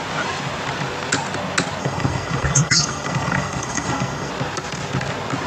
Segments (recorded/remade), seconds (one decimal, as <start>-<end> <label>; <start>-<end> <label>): 0.0-1.8 recorded; 1.8-4.3 remade; 4.3-5.5 recorded